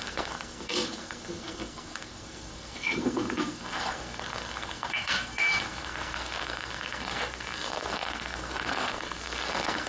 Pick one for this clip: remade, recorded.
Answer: remade